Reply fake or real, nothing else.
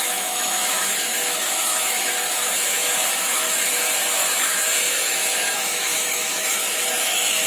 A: fake